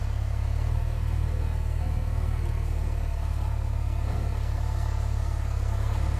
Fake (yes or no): yes